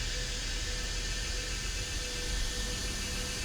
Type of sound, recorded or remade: recorded